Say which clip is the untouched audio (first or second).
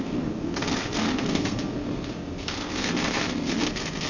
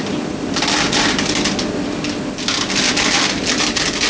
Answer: second